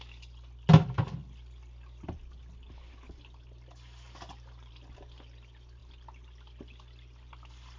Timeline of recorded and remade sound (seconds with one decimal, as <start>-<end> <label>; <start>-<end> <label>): 0.0-7.8 recorded